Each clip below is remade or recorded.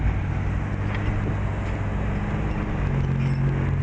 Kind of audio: recorded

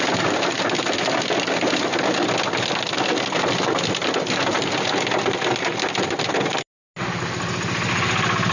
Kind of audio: recorded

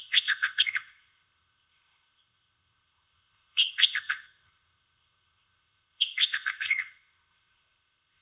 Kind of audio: remade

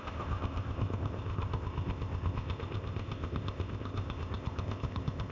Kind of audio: remade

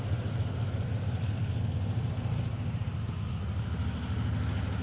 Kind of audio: recorded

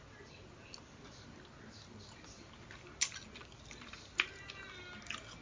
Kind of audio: recorded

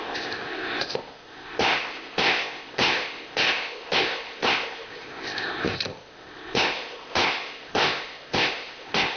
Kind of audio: remade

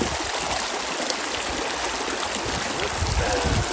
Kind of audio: recorded